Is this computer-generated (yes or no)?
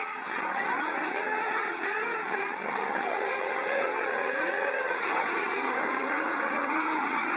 yes